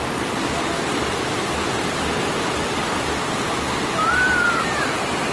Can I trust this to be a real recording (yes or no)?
yes